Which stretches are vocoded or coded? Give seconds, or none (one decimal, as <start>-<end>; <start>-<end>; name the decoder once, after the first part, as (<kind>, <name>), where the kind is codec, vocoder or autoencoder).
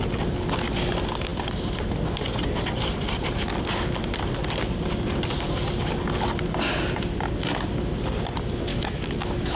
8.7-9.6 (autoencoder, DAC-VAE)